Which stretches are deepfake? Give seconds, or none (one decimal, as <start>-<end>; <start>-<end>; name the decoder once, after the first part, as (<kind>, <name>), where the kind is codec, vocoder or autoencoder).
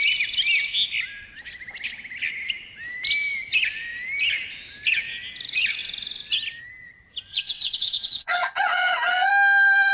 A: 7.3-9.3 (vocoder, WaveNeXt)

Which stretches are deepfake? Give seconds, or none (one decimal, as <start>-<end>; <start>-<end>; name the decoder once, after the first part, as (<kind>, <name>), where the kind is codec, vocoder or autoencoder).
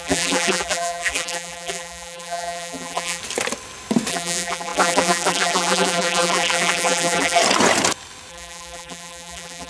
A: 0.0-3.2 (vocoder, BigVGAN v2); 4.1-7.4; 8.3-9.7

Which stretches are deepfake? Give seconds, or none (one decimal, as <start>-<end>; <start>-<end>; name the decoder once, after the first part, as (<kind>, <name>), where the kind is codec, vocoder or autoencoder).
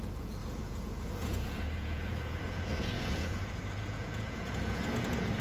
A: 0.0-5.4 (vocoder, Vocos)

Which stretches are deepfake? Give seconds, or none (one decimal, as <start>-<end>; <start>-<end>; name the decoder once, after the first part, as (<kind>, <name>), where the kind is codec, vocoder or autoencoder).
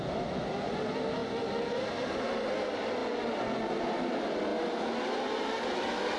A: none